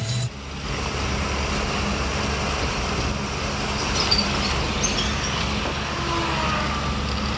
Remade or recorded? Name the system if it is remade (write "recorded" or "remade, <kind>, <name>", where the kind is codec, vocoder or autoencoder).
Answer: recorded